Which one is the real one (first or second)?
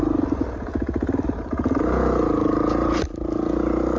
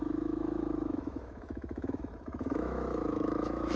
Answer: first